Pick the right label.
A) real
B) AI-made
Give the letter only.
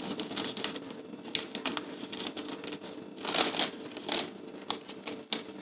A